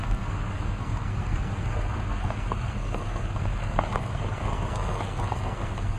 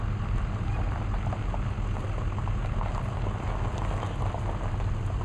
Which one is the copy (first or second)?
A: first